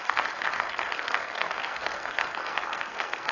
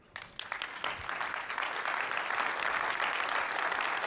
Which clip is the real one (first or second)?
second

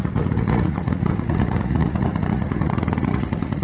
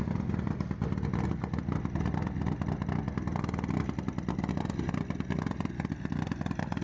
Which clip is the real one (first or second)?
second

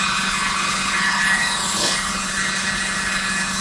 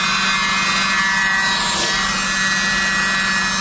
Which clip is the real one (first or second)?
second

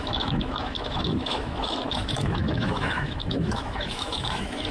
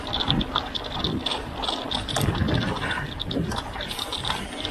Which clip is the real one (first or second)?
second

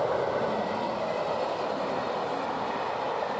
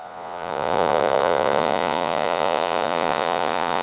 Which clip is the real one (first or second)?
first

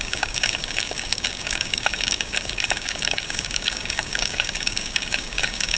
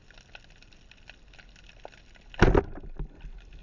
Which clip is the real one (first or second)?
second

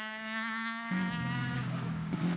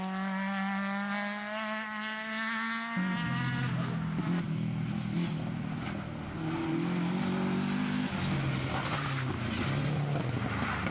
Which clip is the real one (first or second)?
second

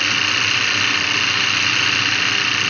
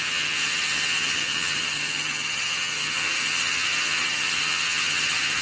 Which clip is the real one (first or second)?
first